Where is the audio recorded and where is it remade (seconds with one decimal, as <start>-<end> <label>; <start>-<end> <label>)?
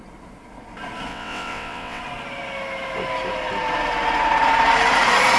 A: 0.0-1.1 recorded; 1.1-2.0 remade; 2.0-5.4 recorded